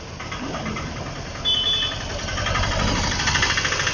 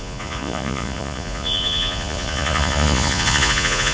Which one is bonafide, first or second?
first